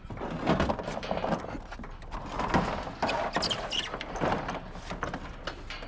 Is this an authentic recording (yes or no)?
yes